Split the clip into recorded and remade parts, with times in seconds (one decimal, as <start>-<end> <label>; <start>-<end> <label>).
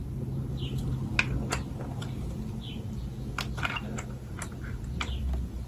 0.0-5.7 recorded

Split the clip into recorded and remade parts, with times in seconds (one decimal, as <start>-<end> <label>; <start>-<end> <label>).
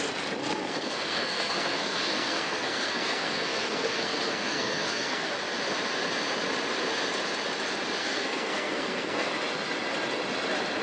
0.0-0.4 recorded; 0.4-5.3 remade; 5.3-8.0 recorded; 8.0-9.3 remade; 9.3-10.8 recorded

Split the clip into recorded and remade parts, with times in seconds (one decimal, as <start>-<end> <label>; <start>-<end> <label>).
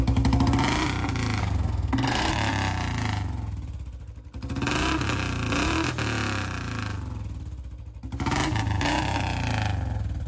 0.0-1.4 recorded; 1.4-2.3 remade; 2.3-10.3 recorded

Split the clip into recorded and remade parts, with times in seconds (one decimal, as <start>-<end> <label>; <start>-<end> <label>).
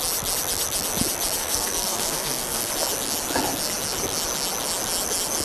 0.0-1.4 recorded; 1.4-2.7 remade; 2.7-5.4 recorded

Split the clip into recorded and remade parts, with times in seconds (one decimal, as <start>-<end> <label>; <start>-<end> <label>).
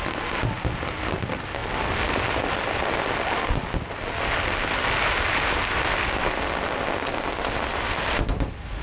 0.0-8.8 recorded